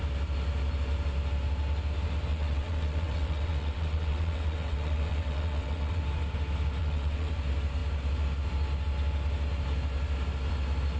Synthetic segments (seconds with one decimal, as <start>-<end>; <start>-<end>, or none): 2.3-6.0; 6.8-7.3